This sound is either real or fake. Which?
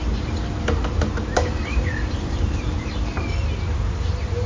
fake